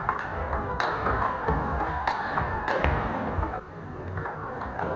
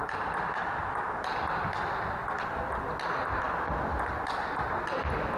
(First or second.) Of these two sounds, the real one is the second